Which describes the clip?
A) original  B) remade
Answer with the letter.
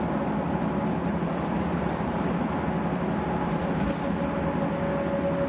A